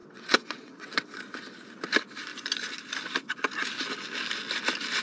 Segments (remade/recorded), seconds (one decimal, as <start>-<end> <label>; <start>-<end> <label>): 0.0-1.1 remade; 1.1-5.0 recorded